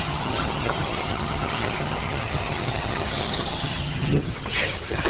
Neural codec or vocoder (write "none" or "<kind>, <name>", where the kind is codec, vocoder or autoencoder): vocoder, HiFi-GAN